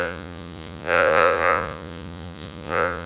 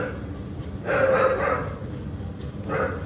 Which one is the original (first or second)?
second